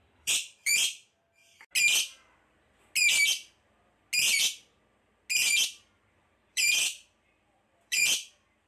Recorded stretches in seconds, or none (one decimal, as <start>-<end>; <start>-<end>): 1.4-6.5